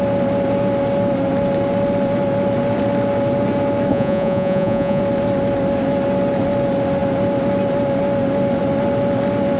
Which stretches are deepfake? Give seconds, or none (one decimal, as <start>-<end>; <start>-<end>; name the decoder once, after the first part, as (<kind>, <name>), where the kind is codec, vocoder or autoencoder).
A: 3.9-5.0 (vocoder, Vocos)